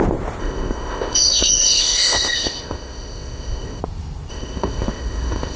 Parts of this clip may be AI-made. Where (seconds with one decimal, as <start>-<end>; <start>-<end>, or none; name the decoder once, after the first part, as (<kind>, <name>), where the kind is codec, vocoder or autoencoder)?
0.4-3.8 (codec, ZipCodec); 4.3-5.6